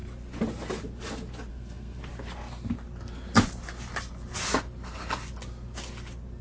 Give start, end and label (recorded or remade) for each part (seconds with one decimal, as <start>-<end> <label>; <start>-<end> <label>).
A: 0.0-1.5 recorded; 1.5-2.0 remade; 2.0-6.4 recorded